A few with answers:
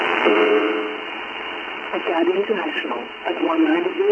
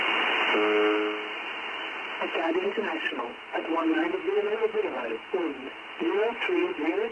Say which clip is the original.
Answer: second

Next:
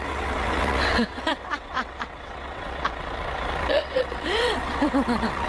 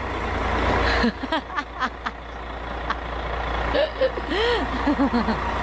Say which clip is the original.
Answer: second